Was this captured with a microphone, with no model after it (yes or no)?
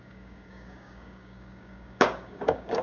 no